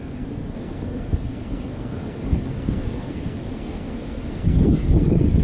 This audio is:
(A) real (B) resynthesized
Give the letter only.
B